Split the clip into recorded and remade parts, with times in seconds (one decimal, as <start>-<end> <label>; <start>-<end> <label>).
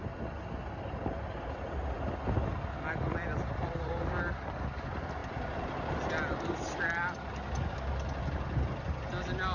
0.0-9.5 recorded